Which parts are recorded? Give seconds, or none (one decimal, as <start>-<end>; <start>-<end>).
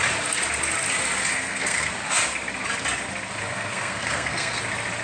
0.0-1.3; 1.9-3.5; 4.6-5.0